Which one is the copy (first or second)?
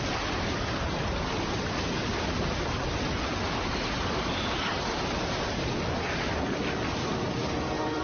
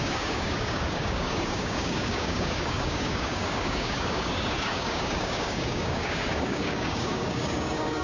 second